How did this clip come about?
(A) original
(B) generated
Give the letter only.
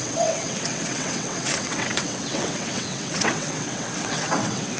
B